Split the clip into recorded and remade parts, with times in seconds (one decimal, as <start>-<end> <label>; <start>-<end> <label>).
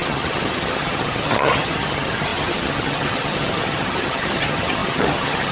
0.0-5.5 remade